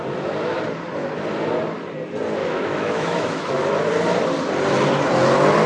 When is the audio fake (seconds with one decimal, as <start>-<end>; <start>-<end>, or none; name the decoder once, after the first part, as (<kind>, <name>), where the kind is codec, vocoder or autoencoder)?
2.4-3.5 (autoencoder, DAC-VAE)